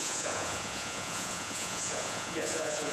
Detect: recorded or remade remade